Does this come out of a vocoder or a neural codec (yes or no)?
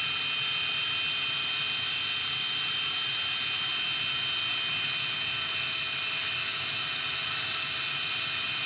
no